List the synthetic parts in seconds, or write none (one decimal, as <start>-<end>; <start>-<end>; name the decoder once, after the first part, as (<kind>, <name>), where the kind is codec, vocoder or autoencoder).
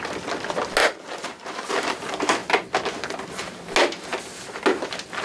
0.8-1.7 (vocoder, BigVGAN v2)